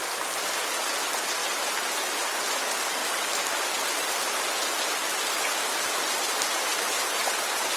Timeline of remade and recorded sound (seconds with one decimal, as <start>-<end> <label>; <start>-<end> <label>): 0.0-1.4 recorded; 1.4-1.9 remade; 1.9-3.0 recorded; 3.0-4.1 remade; 4.1-5.5 recorded; 5.5-7.1 remade; 7.1-7.8 recorded